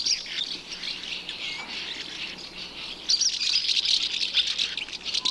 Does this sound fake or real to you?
real